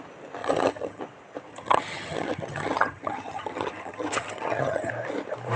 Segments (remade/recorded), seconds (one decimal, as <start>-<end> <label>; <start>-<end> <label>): 0.0-0.4 recorded; 0.4-1.0 remade; 1.0-1.5 recorded; 1.5-4.9 remade; 4.9-5.6 recorded